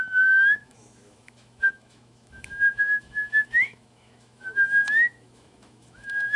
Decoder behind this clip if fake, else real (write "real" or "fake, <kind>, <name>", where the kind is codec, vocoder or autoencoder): fake, autoencoder, DAC-VAE